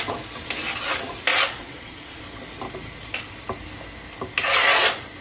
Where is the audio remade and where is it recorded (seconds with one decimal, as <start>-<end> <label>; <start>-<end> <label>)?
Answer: 0.0-1.3 recorded; 1.3-2.2 remade; 2.2-5.2 recorded